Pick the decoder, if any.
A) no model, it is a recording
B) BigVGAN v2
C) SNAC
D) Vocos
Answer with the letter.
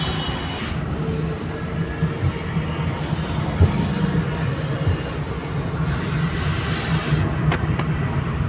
A